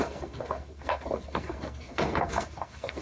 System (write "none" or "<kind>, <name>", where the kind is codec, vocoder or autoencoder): codec, SNAC